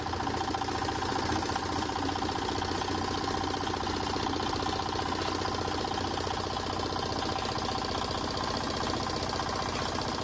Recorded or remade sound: recorded